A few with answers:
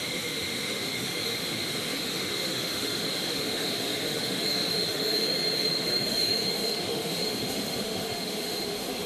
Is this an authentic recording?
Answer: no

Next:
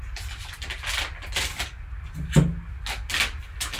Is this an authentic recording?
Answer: yes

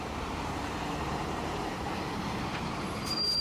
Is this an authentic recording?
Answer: no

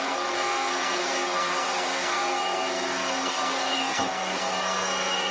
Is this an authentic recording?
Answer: no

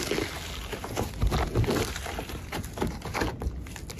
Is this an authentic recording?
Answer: yes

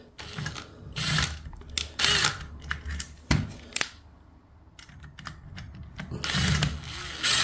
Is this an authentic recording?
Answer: yes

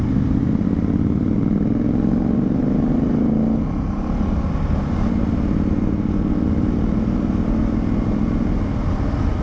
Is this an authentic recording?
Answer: yes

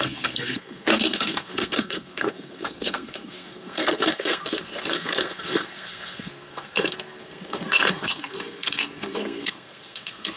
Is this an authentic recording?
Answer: no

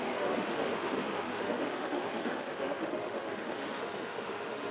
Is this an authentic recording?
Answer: no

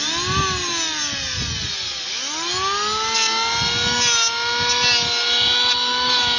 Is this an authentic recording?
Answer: yes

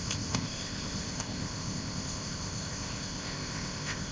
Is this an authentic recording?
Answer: no